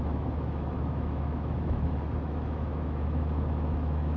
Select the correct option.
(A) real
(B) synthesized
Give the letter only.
B